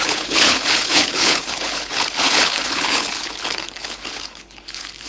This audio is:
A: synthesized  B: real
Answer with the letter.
A